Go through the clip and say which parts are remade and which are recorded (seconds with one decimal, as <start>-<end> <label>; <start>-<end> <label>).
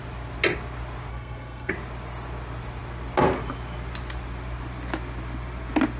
0.0-1.1 recorded; 1.1-1.7 remade; 1.7-6.0 recorded